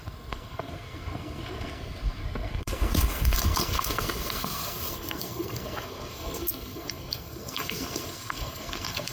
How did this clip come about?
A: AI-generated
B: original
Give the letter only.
A